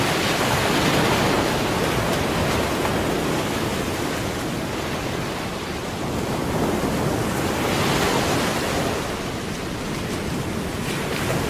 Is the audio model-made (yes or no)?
no